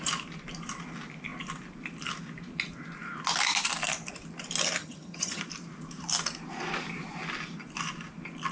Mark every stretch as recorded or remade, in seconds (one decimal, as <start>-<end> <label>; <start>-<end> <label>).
0.0-4.8 recorded; 4.8-5.4 remade; 5.4-8.5 recorded